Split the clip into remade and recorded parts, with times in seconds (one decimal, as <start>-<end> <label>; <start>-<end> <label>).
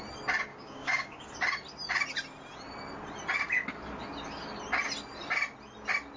0.0-0.5 recorded; 0.5-1.3 remade; 1.3-6.2 recorded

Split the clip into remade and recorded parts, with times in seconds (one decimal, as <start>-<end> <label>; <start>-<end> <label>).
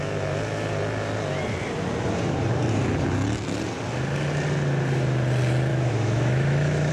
0.0-5.7 recorded; 5.7-6.9 remade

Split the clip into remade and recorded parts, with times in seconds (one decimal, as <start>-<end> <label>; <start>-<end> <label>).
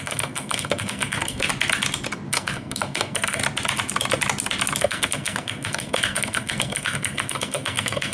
0.0-1.5 remade; 1.5-2.3 recorded; 2.3-3.4 remade; 3.4-4.8 recorded; 4.8-8.1 remade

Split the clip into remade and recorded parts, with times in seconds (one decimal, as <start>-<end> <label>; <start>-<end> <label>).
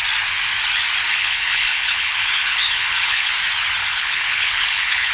0.0-1.1 recorded; 1.1-3.3 remade; 3.3-3.8 recorded; 3.8-5.1 remade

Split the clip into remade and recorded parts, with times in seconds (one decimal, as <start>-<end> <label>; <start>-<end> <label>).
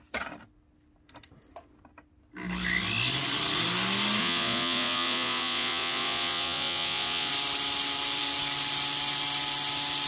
0.0-4.2 recorded; 4.2-7.3 remade; 7.3-10.1 recorded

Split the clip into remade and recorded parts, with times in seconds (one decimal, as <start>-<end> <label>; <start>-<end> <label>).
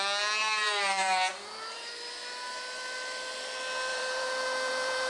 0.0-0.4 recorded; 0.4-1.9 remade; 1.9-3.9 recorded; 3.9-5.1 remade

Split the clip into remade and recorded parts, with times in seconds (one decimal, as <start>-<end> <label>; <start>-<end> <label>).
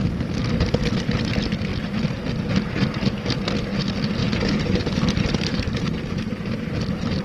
0.0-4.2 recorded; 4.2-6.7 remade; 6.7-7.2 recorded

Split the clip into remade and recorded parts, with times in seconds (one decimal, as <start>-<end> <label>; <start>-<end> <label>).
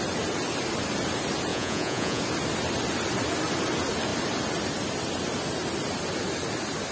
0.0-1.5 recorded; 1.5-2.2 remade; 2.2-6.9 recorded